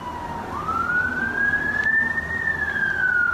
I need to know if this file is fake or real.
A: real